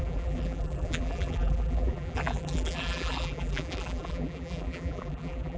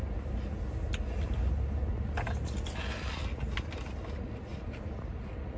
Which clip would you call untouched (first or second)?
second